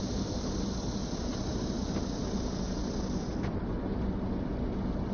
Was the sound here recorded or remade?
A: recorded